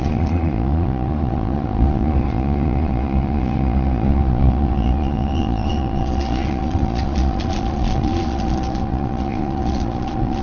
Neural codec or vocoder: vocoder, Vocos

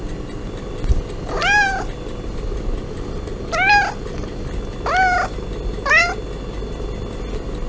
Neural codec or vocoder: none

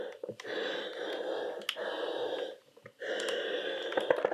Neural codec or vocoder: none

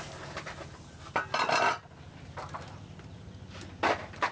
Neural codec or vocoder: none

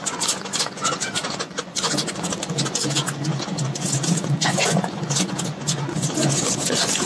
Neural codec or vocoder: vocoder, Vocos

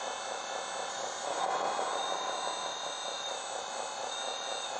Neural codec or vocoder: none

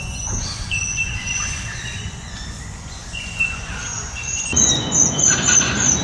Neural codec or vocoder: vocoder, Vocos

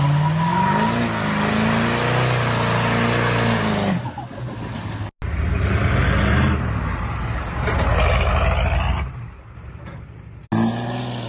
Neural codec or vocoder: none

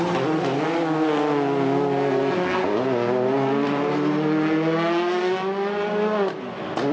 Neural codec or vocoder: none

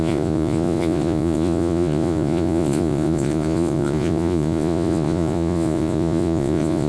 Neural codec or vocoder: vocoder, Vocos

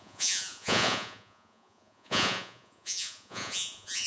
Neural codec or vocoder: vocoder, Vocos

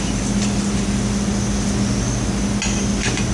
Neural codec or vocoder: none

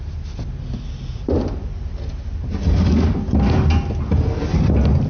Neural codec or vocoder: none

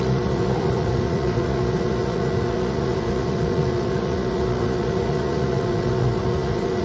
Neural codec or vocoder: vocoder, Vocos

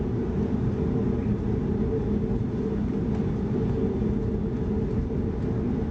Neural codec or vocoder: none